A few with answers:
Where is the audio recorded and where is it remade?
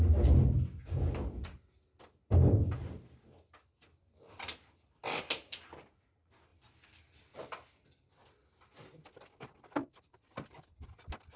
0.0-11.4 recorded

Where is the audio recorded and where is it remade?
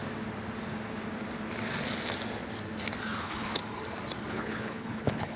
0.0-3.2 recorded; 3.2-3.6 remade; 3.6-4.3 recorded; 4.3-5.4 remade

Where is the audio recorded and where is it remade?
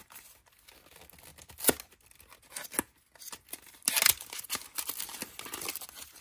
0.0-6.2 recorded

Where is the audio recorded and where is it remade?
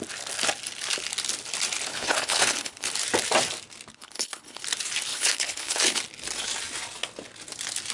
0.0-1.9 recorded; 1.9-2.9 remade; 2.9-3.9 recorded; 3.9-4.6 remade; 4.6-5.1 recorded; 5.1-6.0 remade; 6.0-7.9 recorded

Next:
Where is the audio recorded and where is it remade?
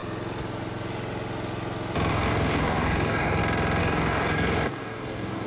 0.0-2.1 recorded; 2.1-3.4 remade; 3.4-3.8 recorded; 3.8-5.5 remade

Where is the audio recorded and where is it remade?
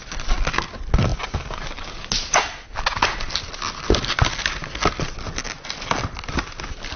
0.0-7.0 recorded